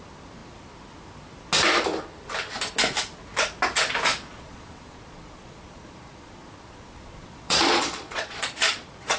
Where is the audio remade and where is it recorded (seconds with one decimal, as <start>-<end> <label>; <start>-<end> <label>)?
0.0-4.3 recorded; 4.3-9.2 remade

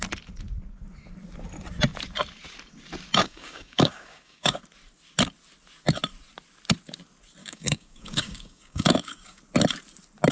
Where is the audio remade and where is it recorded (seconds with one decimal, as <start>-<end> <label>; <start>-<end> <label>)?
0.0-3.2 recorded; 3.2-4.6 remade; 4.6-7.4 recorded; 7.4-9.4 remade; 9.4-10.3 recorded

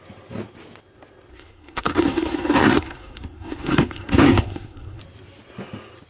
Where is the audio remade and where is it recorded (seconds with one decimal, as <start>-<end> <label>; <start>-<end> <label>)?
0.0-1.3 recorded; 1.3-5.0 remade; 5.0-6.1 recorded